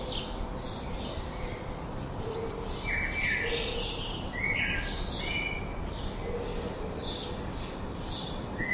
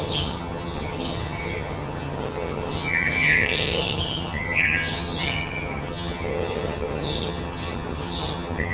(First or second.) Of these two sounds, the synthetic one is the second